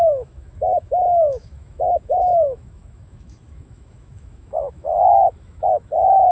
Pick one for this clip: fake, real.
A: fake